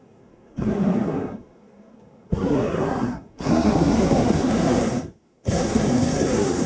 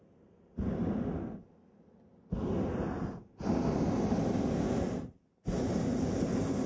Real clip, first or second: second